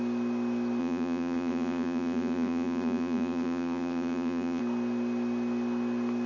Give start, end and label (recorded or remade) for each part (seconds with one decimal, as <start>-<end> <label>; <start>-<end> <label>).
0.0-0.8 recorded; 0.8-4.6 remade; 4.6-6.3 recorded